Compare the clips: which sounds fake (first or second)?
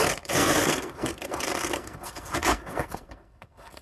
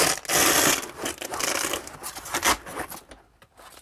first